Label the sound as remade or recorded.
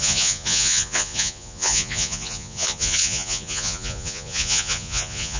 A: remade